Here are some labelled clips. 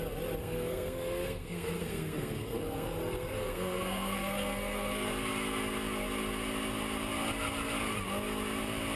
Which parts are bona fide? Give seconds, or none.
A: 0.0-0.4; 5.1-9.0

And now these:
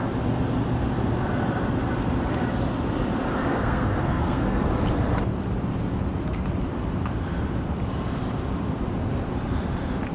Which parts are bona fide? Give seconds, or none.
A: 0.0-3.5; 4.6-10.1

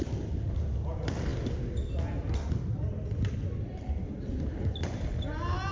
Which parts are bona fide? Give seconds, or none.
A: 0.0-5.7

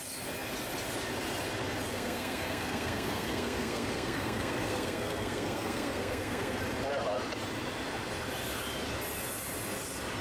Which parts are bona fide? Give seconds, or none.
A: 0.0-1.9; 6.6-10.2

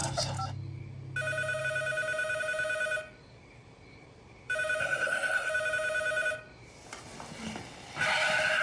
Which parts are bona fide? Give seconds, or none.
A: 0.0-4.8; 5.5-8.6

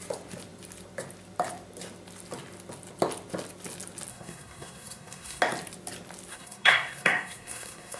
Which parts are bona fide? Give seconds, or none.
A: 0.0-4.1; 5.4-6.3

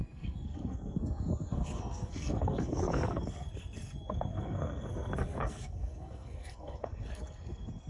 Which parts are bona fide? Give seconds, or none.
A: none

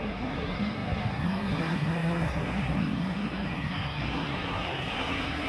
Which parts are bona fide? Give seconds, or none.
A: none